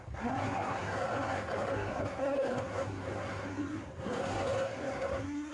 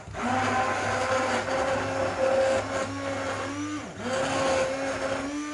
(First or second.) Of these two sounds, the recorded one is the second